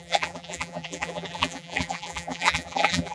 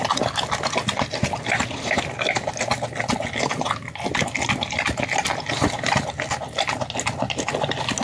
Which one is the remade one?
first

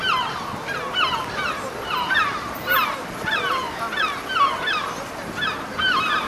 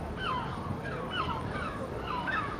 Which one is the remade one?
second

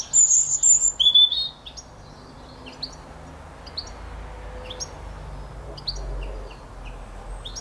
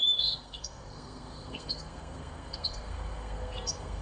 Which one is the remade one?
second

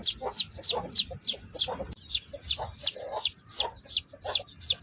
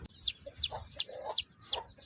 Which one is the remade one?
second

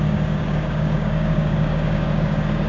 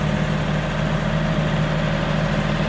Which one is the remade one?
first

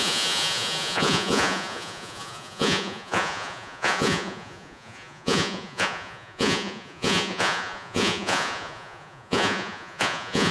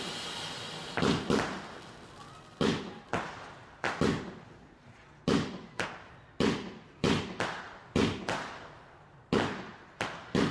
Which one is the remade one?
first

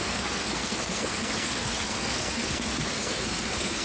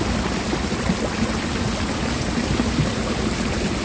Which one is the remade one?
first